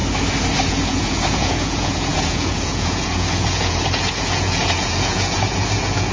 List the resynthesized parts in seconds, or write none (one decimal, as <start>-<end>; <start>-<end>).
0.7-6.1